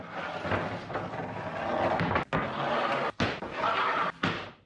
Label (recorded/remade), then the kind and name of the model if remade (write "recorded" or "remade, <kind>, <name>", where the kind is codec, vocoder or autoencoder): recorded